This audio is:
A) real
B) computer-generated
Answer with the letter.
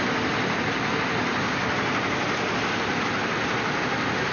A